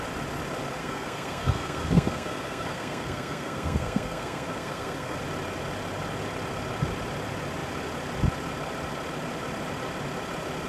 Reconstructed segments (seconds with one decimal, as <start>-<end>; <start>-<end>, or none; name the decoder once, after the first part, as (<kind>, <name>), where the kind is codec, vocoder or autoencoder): 0.8-5.2 (codec, SNAC)